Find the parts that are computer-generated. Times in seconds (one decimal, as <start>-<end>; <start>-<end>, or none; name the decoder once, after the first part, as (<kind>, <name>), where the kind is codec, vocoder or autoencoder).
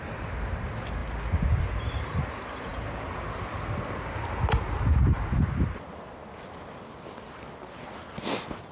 none